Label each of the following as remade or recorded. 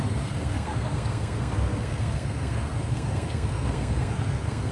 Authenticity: remade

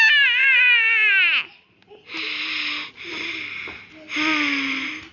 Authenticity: recorded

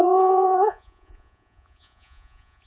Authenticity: remade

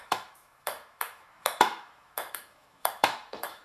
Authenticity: remade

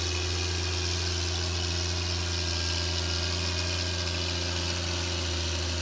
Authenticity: recorded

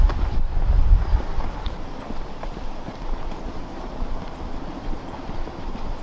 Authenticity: remade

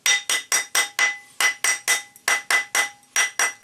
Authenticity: recorded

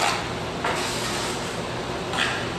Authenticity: recorded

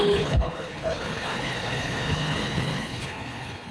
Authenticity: remade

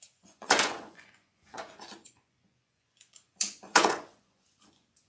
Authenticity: remade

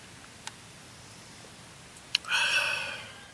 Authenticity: recorded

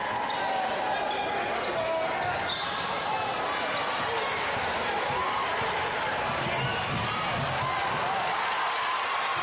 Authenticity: recorded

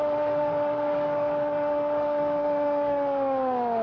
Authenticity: remade